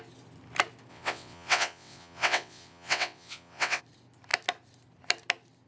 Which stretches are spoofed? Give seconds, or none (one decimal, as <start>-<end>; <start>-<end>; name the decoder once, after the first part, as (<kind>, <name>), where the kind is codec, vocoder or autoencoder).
0.9-3.8 (vocoder, WaveNeXt)

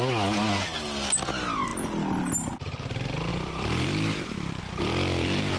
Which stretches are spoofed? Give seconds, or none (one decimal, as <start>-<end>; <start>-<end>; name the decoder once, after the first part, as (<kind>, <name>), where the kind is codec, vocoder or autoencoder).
3.3-4.6 (vocoder, BigVGAN v2)

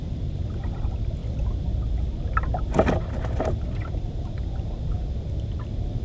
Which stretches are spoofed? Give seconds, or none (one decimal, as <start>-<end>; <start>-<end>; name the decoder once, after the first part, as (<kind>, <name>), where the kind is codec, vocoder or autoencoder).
none

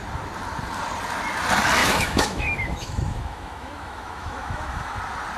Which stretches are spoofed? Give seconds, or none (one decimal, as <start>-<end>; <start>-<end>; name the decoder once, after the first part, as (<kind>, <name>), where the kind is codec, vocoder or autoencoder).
1.8-5.0 (autoencoder, DAC-VAE)

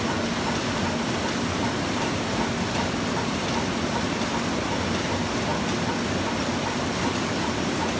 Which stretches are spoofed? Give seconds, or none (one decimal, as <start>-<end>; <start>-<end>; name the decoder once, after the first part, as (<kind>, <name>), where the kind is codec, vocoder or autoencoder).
none

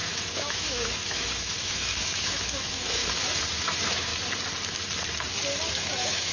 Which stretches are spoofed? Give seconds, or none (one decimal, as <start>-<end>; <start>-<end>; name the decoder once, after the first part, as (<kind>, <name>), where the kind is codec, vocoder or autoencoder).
0.0-3.0 (autoencoder, DAC-VAE); 3.5-4.1; 5.7-6.3

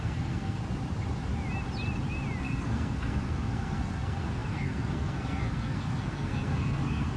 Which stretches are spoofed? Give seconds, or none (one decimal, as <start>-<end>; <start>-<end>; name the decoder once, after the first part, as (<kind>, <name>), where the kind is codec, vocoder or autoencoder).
0.0-0.6 (codec, SNAC); 2.4-7.2